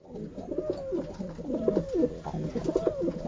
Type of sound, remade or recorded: recorded